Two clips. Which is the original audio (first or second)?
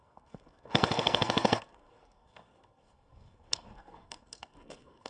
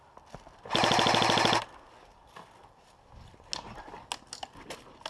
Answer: second